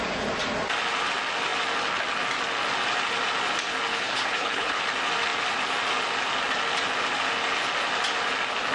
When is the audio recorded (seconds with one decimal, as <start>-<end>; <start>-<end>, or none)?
0.0-3.9; 4.8-8.7